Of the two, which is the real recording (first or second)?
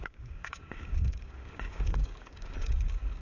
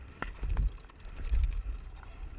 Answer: second